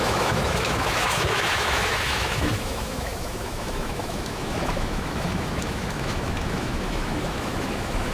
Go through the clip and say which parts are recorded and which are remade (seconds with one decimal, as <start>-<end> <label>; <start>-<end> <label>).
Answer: 0.0-8.1 remade